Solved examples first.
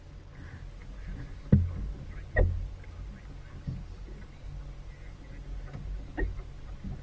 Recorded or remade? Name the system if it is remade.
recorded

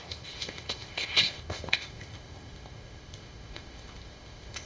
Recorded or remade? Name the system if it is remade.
remade, codec, ZipCodec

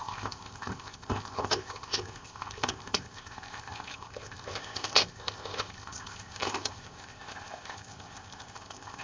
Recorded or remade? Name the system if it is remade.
remade, codec, ZipCodec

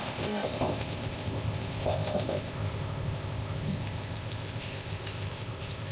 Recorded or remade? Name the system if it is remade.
remade, codec, ZipCodec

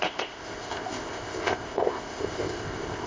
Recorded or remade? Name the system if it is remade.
remade, codec, ZipCodec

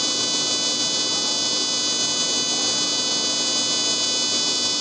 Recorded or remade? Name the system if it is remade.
recorded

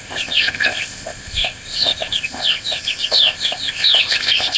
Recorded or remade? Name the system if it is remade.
remade, codec, ZipCodec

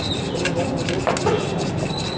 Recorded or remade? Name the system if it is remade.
recorded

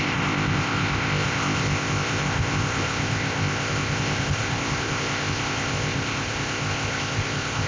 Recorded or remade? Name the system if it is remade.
remade, codec, ZipCodec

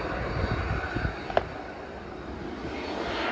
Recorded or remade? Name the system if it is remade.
recorded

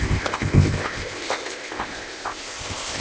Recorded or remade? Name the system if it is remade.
remade, codec, ZipCodec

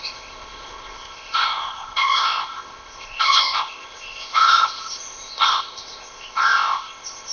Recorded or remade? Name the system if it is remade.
remade, codec, ZipCodec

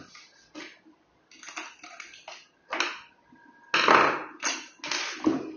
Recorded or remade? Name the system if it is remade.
recorded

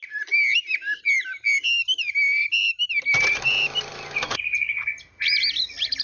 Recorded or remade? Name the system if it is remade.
recorded